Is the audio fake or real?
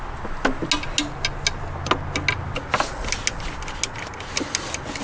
real